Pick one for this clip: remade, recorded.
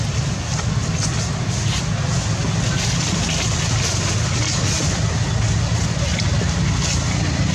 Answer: recorded